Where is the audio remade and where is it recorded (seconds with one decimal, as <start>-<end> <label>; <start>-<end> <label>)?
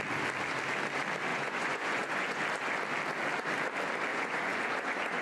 0.0-1.3 recorded; 1.3-2.4 remade; 2.4-4.1 recorded; 4.1-5.2 remade